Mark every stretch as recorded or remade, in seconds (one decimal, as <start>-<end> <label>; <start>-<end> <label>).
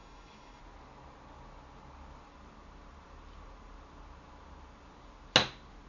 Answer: 0.0-0.6 remade; 0.6-5.9 recorded